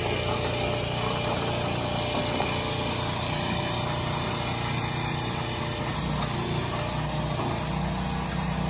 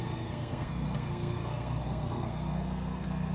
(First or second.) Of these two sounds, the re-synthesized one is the second